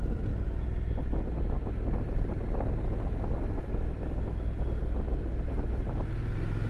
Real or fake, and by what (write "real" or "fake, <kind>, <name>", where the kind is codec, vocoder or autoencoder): real